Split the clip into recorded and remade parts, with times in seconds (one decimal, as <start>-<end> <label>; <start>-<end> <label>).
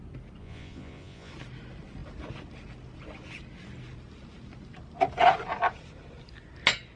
0.0-0.4 recorded; 0.4-1.3 remade; 1.3-7.0 recorded